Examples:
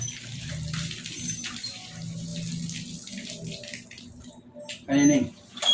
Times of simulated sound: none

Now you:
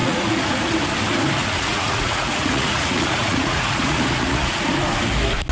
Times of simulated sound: 0.0-0.7 (vocoder, Vocos); 1.4-4.7

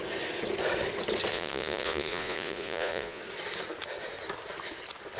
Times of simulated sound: 1.3-3.2 (vocoder, Vocos)

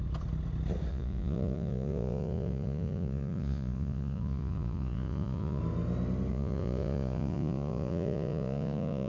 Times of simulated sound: 0.9-5.6 (vocoder, Vocos); 6.3-9.1